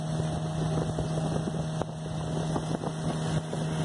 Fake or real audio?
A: real